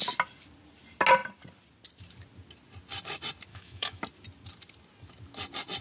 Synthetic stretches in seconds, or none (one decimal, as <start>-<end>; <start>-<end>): 3.5-4.0